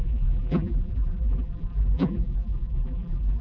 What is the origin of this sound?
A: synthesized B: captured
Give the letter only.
A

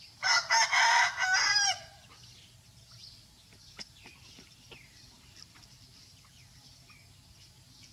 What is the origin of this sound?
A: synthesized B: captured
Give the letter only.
B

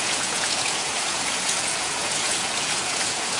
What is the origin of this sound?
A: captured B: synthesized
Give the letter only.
B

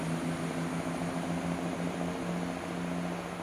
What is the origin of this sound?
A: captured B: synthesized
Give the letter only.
A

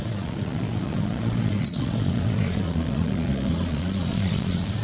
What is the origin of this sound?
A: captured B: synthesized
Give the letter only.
B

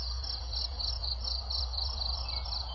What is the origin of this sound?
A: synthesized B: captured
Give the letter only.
B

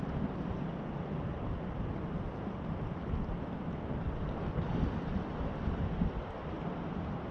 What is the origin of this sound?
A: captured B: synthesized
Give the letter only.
A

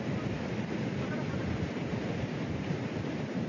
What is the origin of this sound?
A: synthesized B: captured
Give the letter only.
B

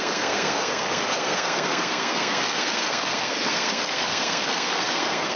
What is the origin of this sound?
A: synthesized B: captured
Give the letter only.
A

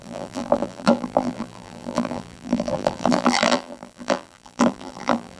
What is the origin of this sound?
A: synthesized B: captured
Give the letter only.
A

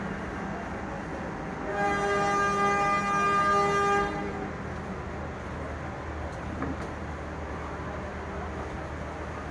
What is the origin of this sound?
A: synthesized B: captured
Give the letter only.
B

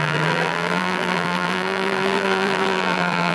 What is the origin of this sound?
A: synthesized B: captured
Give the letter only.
A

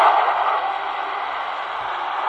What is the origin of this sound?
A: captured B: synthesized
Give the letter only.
A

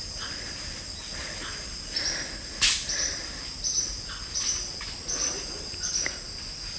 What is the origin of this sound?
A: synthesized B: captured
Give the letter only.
B